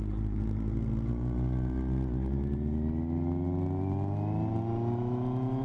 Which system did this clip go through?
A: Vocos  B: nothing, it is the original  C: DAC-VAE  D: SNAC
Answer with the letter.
B